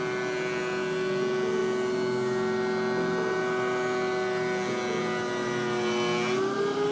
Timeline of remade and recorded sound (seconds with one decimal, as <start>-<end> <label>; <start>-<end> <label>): 0.0-6.9 recorded